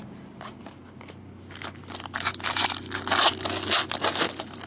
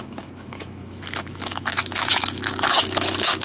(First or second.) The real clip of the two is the first